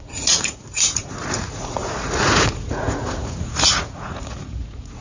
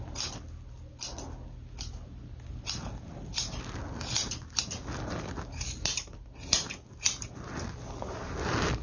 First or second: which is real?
second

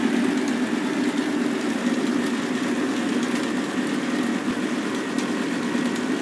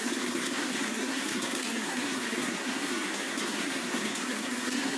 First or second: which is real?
first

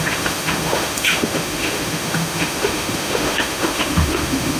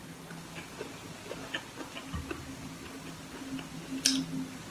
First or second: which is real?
second